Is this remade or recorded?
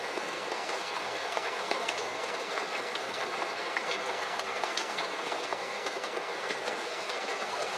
remade